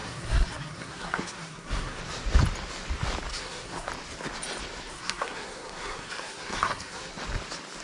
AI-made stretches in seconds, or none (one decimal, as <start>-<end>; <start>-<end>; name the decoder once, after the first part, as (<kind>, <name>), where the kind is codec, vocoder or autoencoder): 0.0-2.0 (codec, SNAC); 3.3-3.9; 4.9-7.1